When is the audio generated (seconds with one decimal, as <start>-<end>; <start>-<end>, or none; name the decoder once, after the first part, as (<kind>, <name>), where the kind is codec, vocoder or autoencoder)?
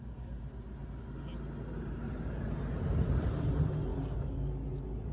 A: none